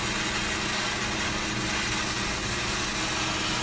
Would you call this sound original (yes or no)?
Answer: yes